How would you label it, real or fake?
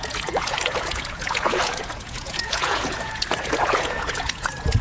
fake